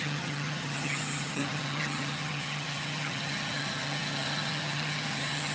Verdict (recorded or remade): remade